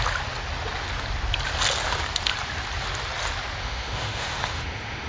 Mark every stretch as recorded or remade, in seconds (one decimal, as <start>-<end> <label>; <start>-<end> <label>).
0.0-3.6 recorded; 3.6-5.1 remade